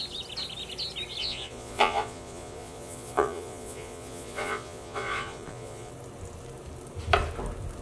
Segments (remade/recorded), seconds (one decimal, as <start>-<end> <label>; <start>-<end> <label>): 0.0-1.2 recorded; 1.2-5.9 remade; 5.9-7.8 recorded